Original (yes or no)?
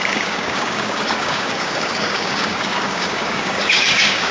no